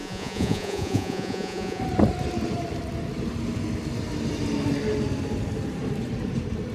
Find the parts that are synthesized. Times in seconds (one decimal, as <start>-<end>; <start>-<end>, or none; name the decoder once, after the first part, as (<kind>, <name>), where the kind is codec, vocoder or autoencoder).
0.0-1.8 (vocoder, Vocos)